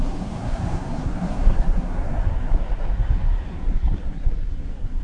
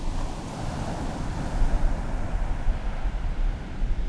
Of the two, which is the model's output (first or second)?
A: first